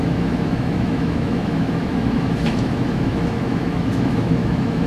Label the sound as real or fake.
fake